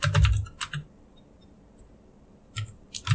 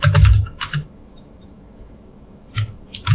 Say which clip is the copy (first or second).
second